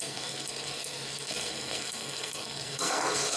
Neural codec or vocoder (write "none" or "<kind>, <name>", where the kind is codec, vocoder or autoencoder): codec, SNAC